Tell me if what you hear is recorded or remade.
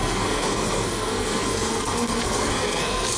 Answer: remade